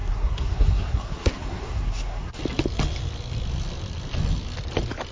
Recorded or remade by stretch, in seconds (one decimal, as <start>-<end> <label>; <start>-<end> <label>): 0.0-2.4 remade; 2.4-5.1 recorded